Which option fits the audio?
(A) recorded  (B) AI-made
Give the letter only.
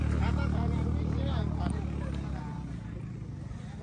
A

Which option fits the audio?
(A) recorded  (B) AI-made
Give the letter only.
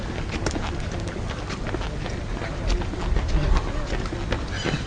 A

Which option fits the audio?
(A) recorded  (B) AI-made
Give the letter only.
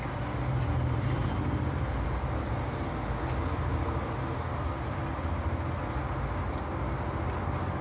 A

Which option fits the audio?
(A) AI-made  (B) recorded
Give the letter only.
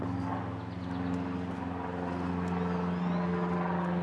B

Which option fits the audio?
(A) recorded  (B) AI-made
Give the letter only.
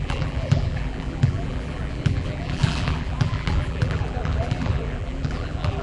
B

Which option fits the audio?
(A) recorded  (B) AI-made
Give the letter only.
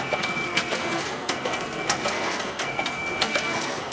B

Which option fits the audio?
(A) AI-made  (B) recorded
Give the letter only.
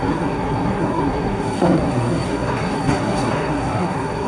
A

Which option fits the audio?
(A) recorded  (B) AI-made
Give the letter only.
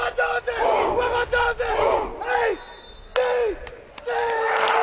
A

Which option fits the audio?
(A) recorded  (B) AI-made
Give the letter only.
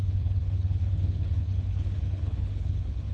B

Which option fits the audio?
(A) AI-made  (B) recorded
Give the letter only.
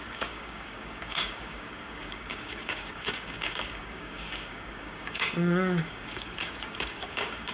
A